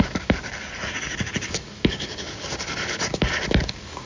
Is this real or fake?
fake